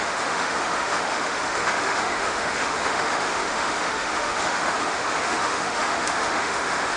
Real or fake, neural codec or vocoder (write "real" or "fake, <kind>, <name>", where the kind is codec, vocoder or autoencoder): fake, autoencoder, DAC-VAE